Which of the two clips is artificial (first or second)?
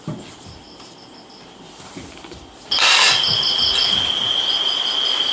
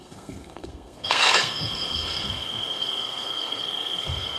second